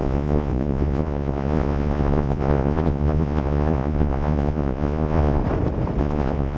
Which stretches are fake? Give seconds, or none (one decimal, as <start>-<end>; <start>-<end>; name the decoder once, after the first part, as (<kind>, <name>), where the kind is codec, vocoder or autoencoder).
0.0-5.4 (vocoder, Vocos); 6.0-6.6